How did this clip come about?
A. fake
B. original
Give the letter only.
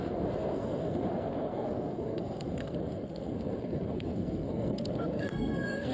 A